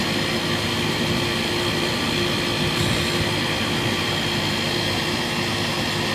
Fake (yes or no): no